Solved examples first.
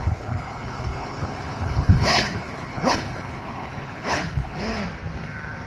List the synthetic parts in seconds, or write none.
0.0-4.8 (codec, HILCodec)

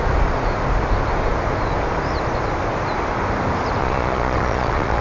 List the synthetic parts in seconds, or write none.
3.8-5.0 (vocoder, Vocos)

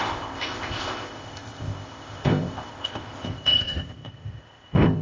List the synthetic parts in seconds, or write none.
0.0-5.0 (codec, ZipCodec)